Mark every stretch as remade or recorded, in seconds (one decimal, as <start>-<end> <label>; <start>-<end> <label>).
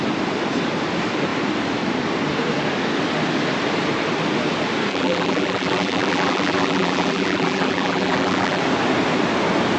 0.0-4.9 recorded; 4.9-8.6 remade; 8.6-9.8 recorded